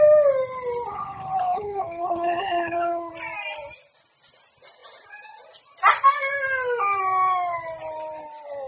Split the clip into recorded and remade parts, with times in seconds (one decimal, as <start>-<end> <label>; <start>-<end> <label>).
0.0-0.9 recorded; 0.9-3.1 remade; 3.1-8.7 recorded